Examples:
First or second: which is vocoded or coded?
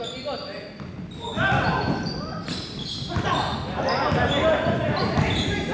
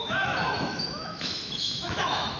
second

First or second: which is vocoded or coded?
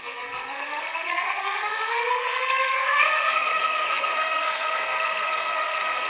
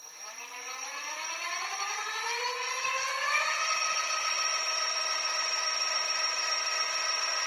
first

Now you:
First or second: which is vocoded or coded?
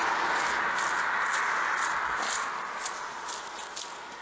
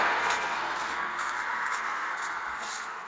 second